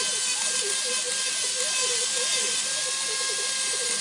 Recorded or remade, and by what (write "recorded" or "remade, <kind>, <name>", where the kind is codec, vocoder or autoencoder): recorded